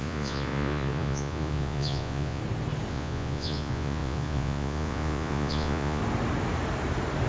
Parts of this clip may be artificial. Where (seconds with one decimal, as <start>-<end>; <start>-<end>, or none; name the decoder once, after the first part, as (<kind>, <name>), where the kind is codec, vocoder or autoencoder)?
0.0-2.4 (vocoder, Vocos); 2.9-6.0